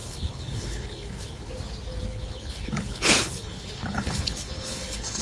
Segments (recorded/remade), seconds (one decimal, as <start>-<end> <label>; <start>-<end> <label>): 0.0-1.5 remade; 1.5-2.1 recorded; 2.1-5.2 remade